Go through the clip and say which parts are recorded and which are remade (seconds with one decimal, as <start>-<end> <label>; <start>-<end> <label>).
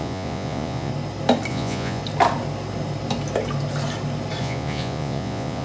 0.0-0.9 remade; 0.9-1.5 recorded; 1.5-2.0 remade; 2.0-4.4 recorded; 4.4-5.6 remade